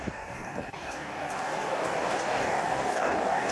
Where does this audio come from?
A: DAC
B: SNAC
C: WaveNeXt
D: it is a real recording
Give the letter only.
A